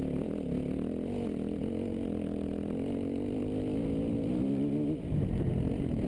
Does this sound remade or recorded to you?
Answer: recorded